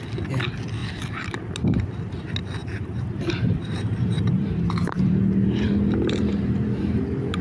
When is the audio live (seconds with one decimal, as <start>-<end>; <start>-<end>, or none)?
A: 0.0-2.6; 7.0-7.4